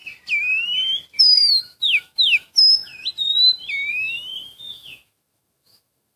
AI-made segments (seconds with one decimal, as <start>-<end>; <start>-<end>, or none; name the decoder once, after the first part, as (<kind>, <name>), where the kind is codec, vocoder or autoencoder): 1.2-2.9 (autoencoder, DAC-VAE); 3.9-6.2